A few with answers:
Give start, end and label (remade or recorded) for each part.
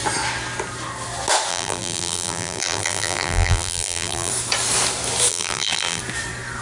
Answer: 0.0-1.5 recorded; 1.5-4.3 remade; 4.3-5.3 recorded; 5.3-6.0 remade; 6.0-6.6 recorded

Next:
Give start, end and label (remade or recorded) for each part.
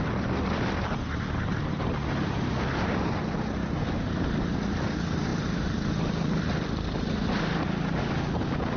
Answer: 0.0-8.8 recorded